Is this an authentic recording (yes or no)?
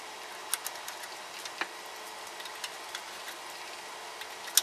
yes